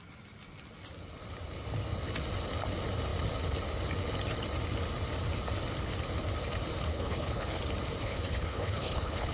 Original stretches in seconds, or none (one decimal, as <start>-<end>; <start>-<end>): 0.0-6.9; 7.6-8.0